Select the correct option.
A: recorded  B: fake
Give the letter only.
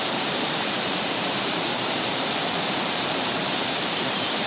B